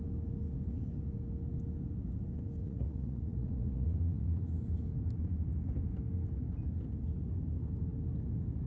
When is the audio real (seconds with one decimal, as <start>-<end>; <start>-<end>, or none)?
0.0-2.6; 4.5-8.7